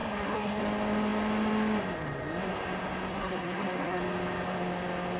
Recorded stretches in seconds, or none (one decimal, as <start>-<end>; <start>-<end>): 0.6-3.1; 4.0-5.2